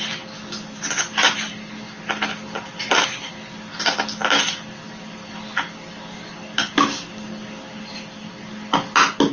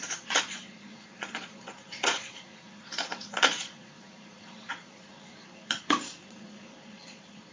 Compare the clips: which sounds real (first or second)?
first